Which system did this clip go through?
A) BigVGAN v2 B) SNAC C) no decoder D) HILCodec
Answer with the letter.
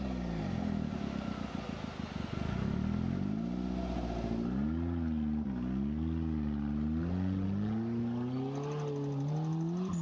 C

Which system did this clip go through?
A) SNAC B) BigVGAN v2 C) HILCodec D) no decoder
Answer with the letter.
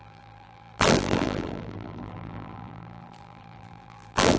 B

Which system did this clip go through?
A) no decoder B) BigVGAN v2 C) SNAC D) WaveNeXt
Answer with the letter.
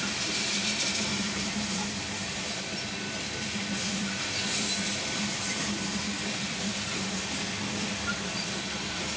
B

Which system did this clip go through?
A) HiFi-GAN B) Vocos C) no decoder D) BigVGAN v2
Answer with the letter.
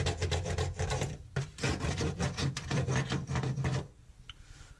C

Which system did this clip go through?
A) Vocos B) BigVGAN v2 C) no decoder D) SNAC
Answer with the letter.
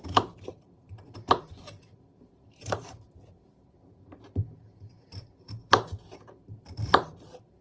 B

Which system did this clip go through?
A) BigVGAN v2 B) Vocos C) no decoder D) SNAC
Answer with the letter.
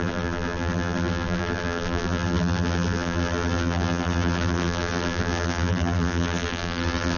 A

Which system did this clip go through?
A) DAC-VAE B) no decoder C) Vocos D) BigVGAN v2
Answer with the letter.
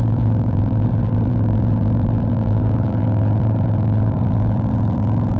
D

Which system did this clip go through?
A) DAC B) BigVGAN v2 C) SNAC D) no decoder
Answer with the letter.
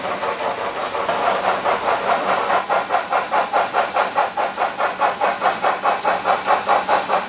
D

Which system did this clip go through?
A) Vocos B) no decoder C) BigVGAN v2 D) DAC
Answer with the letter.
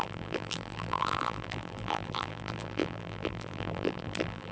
C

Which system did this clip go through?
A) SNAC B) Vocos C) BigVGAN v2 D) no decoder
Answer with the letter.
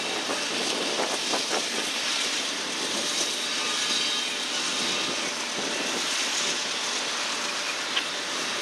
D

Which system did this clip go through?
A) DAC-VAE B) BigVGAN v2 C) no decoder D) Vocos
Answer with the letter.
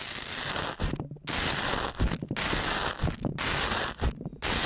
C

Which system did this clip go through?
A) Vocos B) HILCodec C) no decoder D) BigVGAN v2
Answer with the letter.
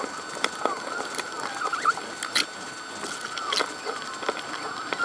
C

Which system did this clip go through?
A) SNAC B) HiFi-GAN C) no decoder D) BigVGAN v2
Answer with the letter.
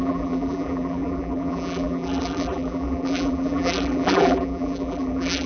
D